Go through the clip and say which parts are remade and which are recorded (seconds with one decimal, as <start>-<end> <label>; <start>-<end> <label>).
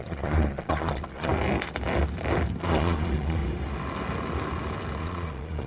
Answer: 0.0-1.3 remade; 1.3-2.6 recorded; 2.6-3.4 remade; 3.4-5.0 recorded; 5.0-5.7 remade